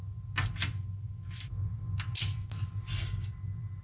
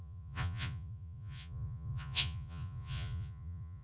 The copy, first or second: second